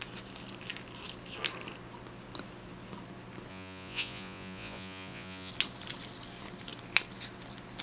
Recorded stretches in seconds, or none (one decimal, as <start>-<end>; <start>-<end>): 0.0-3.5; 5.5-7.8